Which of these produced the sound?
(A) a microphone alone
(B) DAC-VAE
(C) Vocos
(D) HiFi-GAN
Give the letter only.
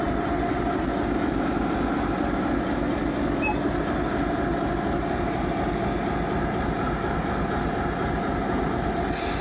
A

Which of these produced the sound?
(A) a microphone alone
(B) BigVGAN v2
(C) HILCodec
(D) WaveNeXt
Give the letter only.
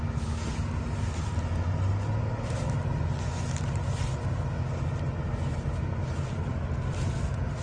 A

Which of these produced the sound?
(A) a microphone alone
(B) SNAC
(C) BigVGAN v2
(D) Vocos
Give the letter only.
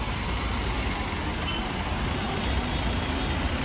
A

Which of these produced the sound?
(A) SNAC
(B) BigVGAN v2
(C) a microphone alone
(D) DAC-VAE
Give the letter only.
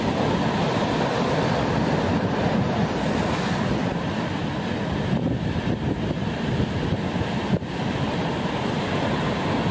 C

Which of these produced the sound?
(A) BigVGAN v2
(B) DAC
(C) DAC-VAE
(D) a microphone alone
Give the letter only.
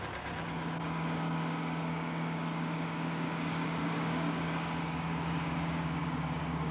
B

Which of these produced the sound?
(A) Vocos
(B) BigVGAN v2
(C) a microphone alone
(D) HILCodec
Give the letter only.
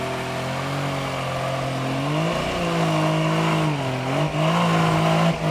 C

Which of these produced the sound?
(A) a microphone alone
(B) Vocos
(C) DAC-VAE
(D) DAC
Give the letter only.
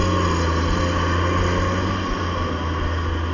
A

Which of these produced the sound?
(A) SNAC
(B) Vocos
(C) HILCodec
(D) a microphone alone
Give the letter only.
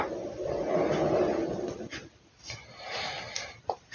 D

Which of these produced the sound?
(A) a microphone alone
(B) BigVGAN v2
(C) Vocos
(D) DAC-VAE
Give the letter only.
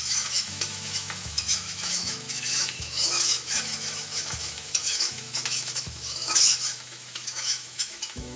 D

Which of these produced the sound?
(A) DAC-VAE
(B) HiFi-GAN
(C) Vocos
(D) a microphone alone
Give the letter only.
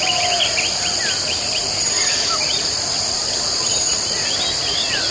D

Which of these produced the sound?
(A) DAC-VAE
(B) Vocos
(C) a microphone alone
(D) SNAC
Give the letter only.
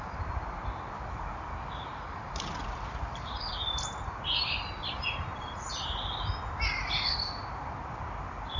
C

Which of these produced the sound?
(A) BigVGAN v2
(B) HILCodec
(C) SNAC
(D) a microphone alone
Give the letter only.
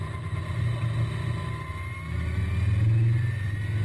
D